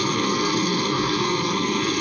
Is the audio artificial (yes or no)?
yes